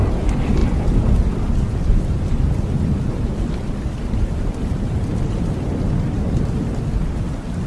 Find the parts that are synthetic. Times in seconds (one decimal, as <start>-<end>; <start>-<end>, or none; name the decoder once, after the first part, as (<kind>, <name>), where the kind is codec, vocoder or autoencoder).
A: 0.6-4.4 (vocoder, BigVGAN v2)